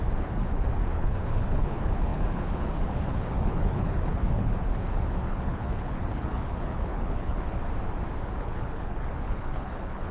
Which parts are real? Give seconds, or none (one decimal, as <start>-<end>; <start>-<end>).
7.6-8.4